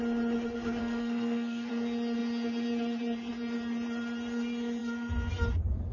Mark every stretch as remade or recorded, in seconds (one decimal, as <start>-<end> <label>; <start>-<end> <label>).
0.0-0.8 recorded; 0.8-1.7 remade; 1.7-5.9 recorded